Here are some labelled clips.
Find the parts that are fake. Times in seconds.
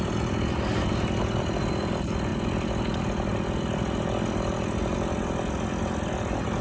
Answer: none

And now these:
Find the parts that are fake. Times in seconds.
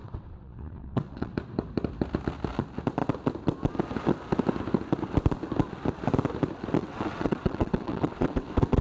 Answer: 0.0-1.3 (vocoder, WaveNeXt); 6.8-8.8